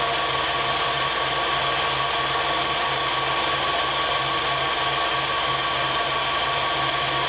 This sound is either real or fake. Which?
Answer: real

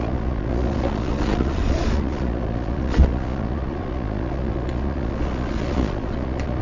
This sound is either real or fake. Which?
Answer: fake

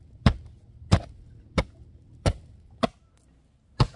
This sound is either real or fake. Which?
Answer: real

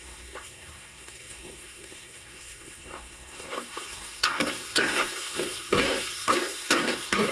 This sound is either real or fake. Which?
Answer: fake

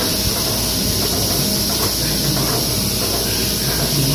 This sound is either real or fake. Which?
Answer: real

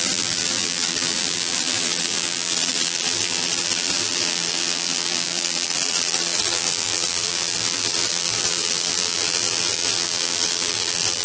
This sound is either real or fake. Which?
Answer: fake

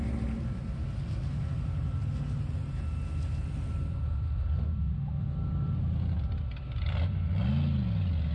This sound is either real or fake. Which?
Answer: real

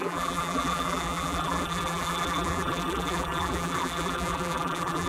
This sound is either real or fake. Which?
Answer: fake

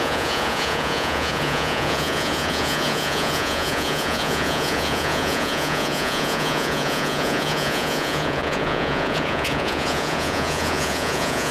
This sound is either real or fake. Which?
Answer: fake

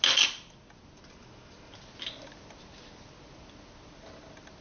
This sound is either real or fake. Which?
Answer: real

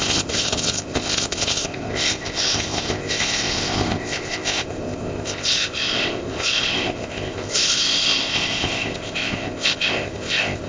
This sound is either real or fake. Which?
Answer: fake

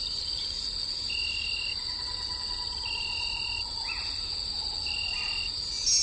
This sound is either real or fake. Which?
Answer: real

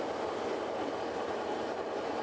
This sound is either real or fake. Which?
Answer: real